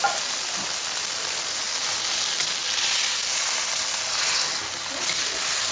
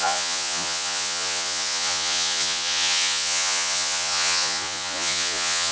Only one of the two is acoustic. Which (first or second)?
first